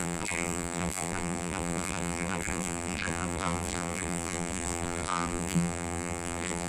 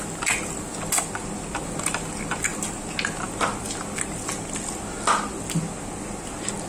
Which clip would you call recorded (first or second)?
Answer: second